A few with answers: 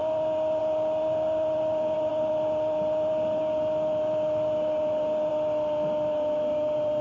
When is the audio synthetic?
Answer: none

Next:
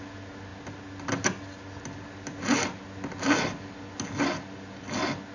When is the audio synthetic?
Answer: none

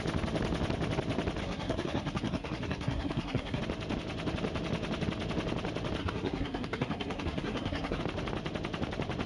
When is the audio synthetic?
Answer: 1.4-3.6 (codec, SNAC); 6.0-8.0

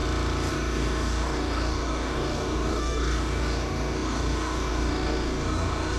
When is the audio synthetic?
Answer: 0.5-6.0 (codec, DAC)

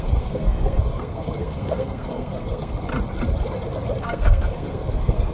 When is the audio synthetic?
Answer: 0.0-2.9 (codec, SNAC); 4.0-5.3

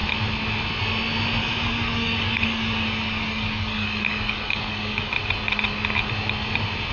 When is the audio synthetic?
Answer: 1.4-5.1 (codec, DAC)